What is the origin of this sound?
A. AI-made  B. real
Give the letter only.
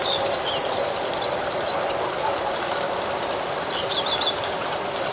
A